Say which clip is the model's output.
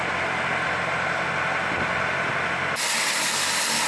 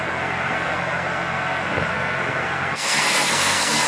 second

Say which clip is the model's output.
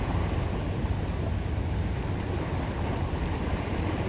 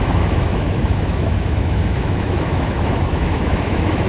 second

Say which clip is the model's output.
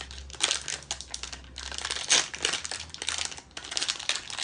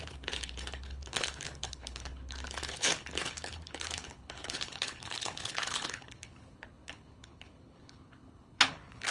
second